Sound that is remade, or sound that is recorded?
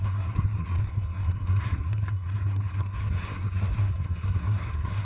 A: remade